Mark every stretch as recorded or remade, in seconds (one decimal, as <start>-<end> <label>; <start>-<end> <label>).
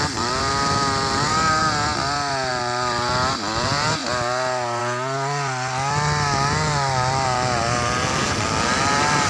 0.0-9.3 recorded